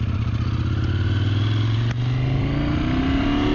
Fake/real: real